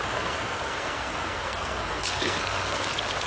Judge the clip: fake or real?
fake